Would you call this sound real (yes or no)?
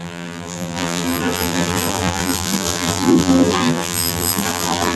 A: no